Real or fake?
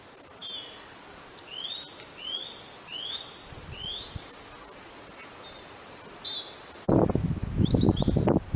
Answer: real